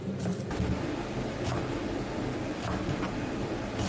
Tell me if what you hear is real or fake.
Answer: fake